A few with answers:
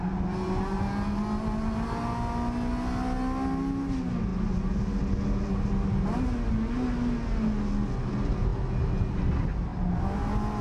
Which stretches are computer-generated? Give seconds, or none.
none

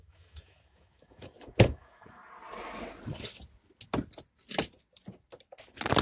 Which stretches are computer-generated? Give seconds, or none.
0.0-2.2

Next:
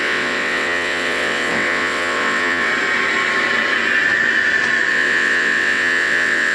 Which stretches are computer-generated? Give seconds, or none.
0.0-2.7; 4.9-6.5